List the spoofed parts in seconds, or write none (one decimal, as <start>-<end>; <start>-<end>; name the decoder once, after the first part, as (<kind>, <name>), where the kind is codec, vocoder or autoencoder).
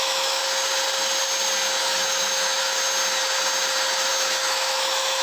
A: 0.0-0.4 (autoencoder, DAC-VAE); 1.8-2.8; 4.1-5.2